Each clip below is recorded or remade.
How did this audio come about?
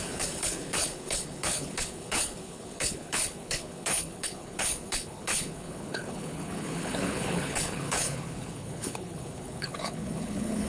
remade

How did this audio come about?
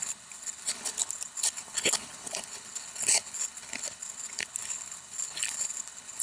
remade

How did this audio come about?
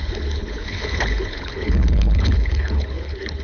remade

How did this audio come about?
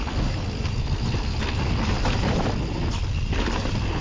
recorded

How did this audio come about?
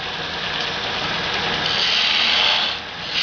recorded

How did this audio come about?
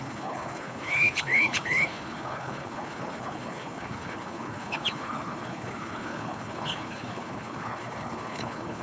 remade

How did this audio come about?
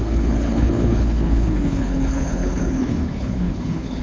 remade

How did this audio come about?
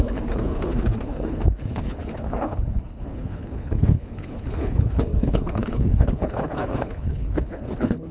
remade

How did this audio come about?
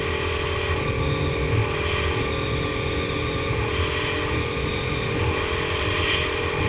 recorded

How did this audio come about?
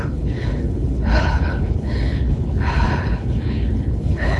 remade